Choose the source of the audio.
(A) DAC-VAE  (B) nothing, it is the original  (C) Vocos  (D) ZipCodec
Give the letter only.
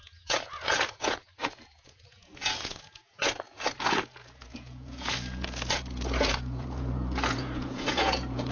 C